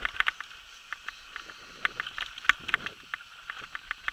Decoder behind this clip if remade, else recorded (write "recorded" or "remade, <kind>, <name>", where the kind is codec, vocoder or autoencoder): recorded